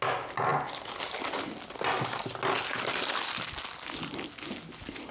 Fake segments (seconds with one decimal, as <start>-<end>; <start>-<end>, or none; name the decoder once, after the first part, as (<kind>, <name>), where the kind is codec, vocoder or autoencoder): none

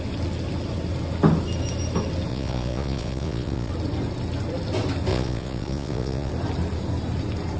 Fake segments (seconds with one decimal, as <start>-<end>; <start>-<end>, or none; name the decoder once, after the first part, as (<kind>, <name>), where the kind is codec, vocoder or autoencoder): 2.3-3.7 (vocoder, Vocos); 5.1-6.3

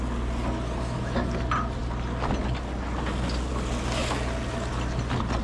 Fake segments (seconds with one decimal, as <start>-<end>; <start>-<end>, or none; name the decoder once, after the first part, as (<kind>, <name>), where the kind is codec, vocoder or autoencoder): none

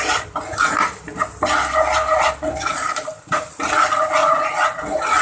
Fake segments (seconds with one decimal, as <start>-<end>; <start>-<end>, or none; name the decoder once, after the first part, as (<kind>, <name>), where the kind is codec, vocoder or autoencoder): 4.2-4.8 (vocoder, Vocos)

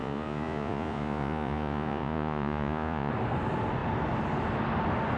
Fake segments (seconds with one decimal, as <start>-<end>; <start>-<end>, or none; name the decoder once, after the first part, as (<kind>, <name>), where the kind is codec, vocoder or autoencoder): 0.0-3.1 (vocoder, Vocos)

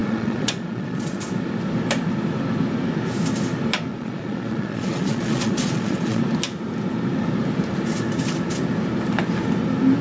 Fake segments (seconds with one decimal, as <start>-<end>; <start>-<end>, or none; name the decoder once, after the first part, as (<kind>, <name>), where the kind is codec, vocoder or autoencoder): 0.0-1.2 (vocoder, Vocos); 3.9-6.2

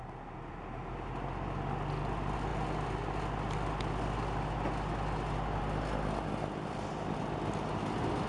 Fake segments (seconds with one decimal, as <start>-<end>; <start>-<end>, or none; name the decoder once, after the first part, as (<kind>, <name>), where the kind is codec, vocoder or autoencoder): none